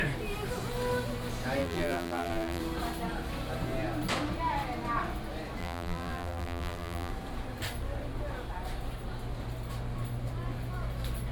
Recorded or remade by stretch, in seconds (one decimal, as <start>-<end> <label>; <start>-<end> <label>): 0.0-1.6 recorded; 1.6-2.6 remade; 2.6-5.6 recorded; 5.6-7.1 remade; 7.1-11.3 recorded